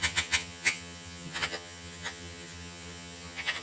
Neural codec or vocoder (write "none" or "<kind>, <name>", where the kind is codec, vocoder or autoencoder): vocoder, HiFi-GAN